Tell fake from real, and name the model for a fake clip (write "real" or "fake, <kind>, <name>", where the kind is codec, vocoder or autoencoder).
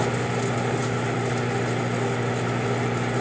real